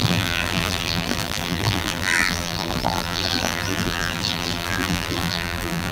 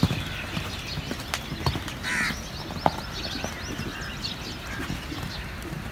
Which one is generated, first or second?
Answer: first